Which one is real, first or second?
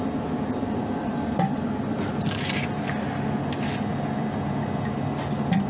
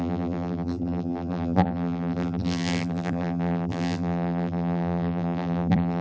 first